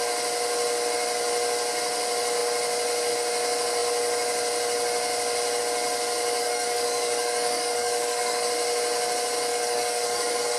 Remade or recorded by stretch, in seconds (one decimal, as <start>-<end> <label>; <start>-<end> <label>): 0.0-6.4 recorded; 6.4-8.5 remade; 8.5-9.5 recorded; 9.5-10.6 remade